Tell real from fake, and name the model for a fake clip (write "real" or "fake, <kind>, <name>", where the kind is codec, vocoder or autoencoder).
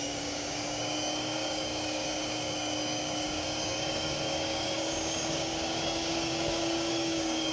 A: fake, codec, DAC